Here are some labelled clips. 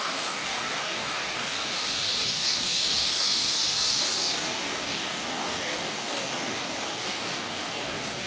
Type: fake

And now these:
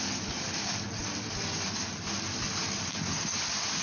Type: real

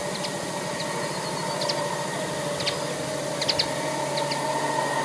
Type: real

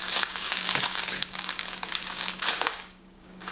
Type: fake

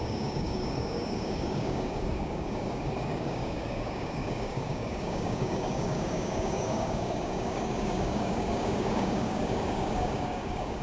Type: fake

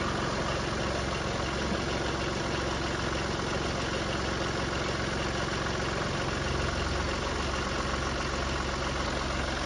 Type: real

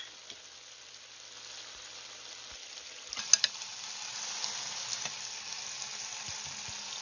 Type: real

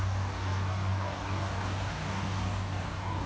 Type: fake